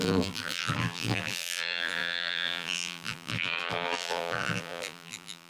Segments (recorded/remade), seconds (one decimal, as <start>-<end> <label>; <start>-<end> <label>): 0.0-5.5 remade

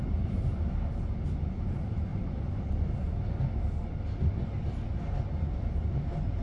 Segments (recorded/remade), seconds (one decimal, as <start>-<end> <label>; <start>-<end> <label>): 0.0-0.5 remade; 0.5-1.7 recorded; 1.7-2.1 remade; 2.1-5.9 recorded; 5.9-6.4 remade

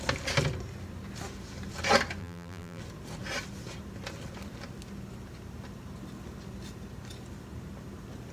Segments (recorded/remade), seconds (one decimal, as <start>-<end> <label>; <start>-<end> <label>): 0.0-2.2 recorded; 2.2-2.8 remade; 2.8-8.3 recorded

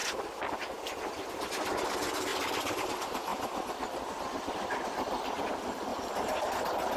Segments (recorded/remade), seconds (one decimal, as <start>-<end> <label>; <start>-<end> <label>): 0.0-2.3 recorded; 2.3-2.9 remade; 2.9-5.9 recorded; 5.9-6.5 remade; 6.5-7.0 recorded

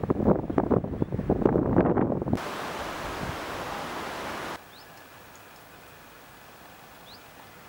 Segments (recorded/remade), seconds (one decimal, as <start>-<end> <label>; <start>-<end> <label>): 0.0-7.7 recorded